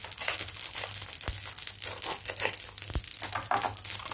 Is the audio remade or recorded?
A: recorded